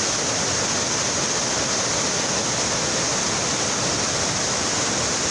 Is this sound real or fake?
real